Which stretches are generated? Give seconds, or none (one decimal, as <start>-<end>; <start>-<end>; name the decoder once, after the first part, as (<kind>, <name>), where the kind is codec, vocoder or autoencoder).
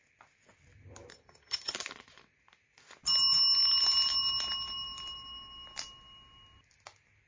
1.1-1.7 (vocoder, HiFi-GAN)